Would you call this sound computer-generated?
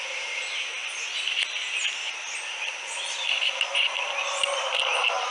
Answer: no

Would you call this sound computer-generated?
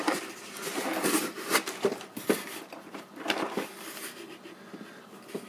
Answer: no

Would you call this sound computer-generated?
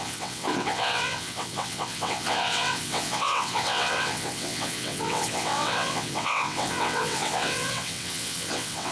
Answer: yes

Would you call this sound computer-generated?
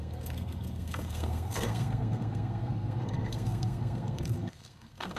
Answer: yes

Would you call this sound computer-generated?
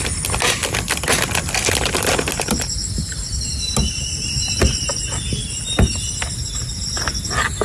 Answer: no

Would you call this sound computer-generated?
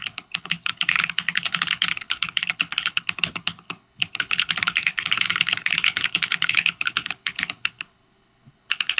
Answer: yes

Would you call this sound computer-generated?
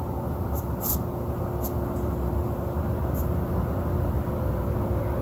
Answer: no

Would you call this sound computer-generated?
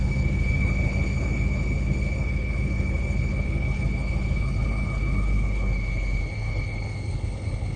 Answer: yes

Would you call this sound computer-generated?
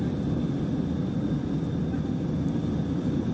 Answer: no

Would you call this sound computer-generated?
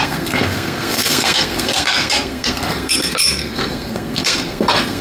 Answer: yes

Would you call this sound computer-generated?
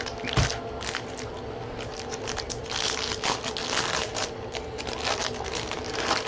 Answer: no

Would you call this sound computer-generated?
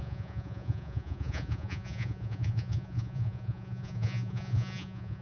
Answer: yes